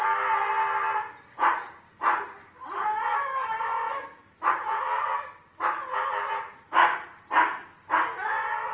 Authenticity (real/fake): real